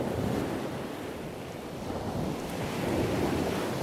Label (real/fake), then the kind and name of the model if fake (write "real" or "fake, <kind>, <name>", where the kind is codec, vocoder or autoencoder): real